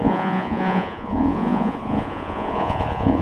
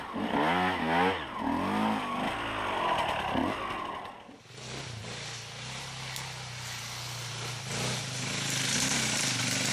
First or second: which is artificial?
first